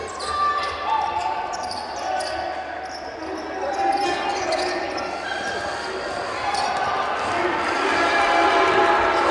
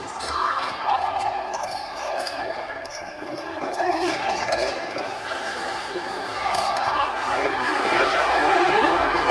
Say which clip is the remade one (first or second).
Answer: second